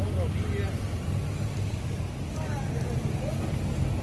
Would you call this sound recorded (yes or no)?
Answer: yes